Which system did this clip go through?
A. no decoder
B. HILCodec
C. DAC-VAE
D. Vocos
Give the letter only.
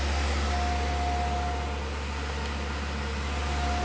A